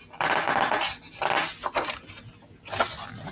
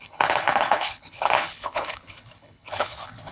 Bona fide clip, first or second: first